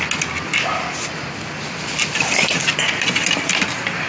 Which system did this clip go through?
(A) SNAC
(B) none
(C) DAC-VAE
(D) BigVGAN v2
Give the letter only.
B